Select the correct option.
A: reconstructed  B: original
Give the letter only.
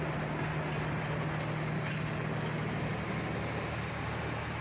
B